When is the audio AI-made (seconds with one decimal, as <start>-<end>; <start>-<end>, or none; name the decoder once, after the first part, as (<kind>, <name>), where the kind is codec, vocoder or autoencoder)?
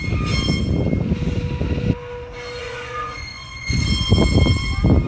2.6-3.8 (vocoder, Vocos)